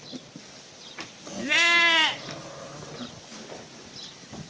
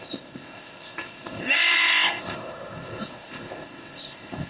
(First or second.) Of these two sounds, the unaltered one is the first